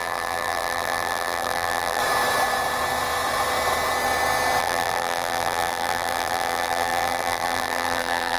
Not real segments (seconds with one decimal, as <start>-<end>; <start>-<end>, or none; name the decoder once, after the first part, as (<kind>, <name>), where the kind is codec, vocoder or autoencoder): 0.0-2.0 (vocoder, BigVGAN v2); 4.6-8.4